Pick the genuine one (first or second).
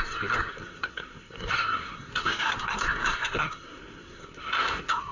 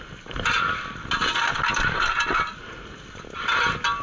second